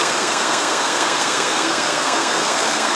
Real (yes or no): no